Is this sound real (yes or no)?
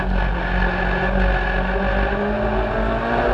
yes